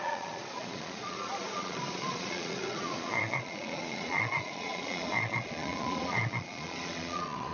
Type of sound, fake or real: fake